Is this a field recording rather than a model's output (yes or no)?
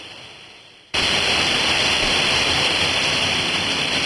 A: no